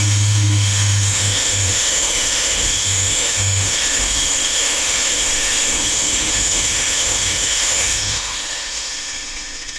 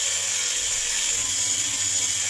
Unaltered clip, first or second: second